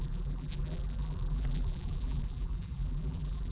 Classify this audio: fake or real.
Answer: fake